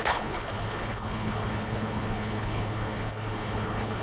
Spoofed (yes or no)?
yes